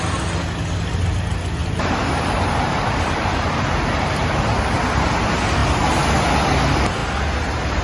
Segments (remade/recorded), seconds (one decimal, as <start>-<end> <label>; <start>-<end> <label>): 0.0-1.6 recorded; 1.6-4.6 remade; 4.6-7.8 recorded